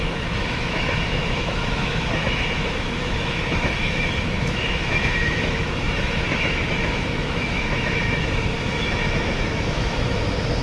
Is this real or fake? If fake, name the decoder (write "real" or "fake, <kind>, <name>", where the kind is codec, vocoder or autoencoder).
fake, autoencoder, DAC-VAE